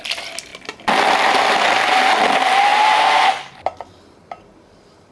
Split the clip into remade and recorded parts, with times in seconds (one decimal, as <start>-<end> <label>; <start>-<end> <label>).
0.0-5.1 recorded